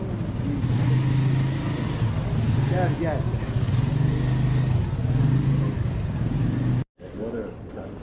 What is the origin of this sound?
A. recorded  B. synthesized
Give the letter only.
A